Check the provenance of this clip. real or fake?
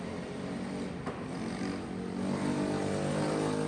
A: real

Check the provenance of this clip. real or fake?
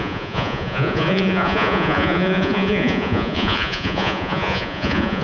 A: fake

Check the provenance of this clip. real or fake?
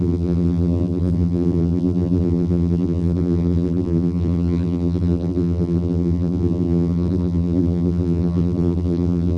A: fake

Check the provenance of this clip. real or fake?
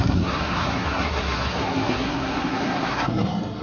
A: fake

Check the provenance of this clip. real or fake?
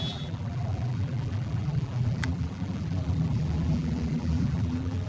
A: fake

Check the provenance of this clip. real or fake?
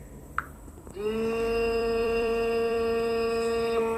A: fake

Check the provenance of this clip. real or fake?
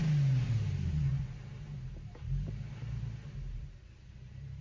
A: real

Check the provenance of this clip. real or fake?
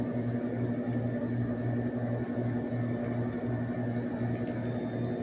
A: real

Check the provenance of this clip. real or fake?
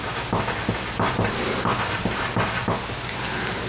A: real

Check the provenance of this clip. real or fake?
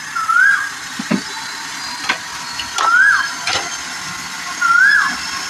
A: real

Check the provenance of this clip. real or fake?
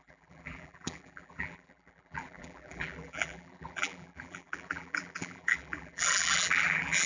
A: fake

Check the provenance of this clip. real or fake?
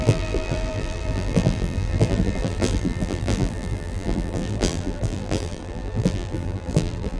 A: fake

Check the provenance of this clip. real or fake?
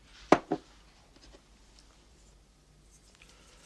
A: real